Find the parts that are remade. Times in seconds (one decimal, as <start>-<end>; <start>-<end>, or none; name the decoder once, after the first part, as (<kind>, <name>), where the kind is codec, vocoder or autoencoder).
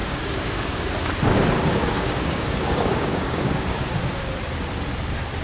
0.0-0.9 (codec, DAC); 1.6-3.9